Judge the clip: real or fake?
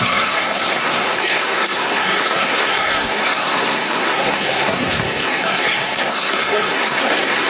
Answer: fake